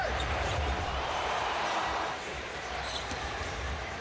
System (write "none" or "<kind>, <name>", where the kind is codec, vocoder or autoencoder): vocoder, BigVGAN v2